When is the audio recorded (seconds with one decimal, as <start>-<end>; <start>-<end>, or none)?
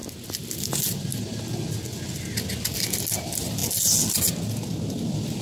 0.0-5.4